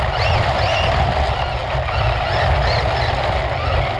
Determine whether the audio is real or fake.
real